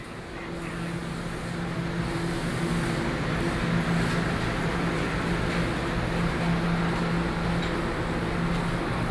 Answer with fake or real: real